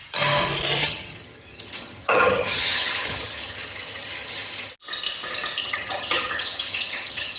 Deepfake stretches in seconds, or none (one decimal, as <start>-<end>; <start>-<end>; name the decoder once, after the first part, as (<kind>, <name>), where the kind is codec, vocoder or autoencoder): 0.8-4.7 (vocoder, HiFi-GAN); 5.6-7.4